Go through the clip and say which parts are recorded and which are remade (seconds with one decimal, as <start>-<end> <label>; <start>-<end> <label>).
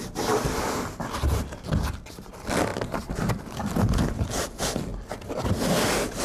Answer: 0.0-2.7 remade; 2.7-4.4 recorded; 4.4-4.9 remade; 4.9-6.2 recorded